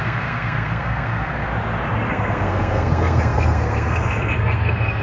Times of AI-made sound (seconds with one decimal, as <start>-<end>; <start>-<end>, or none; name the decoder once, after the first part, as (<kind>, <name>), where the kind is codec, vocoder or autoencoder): 0.0-1.5 (codec, SNAC); 2.1-5.0